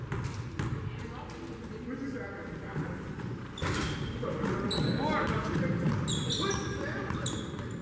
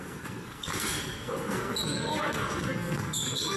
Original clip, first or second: first